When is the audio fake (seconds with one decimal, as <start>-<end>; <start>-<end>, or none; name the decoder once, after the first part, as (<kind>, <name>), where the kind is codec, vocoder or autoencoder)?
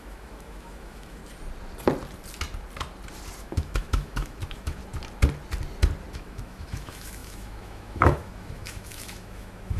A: 0.0-1.2 (autoencoder, DAC-VAE); 3.4-4.8; 6.1-9.8